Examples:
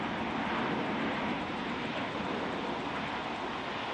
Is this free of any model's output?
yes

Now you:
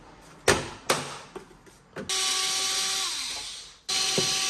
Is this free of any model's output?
yes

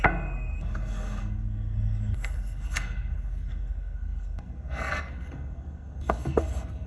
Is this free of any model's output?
no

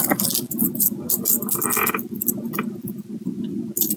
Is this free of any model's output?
yes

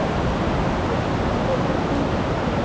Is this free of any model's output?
yes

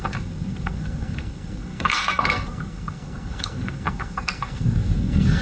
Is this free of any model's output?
no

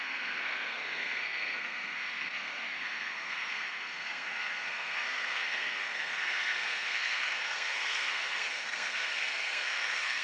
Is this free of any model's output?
no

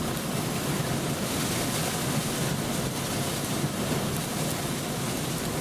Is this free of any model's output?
yes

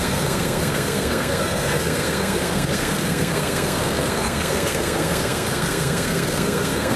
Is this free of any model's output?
no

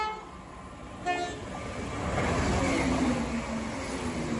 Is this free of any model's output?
yes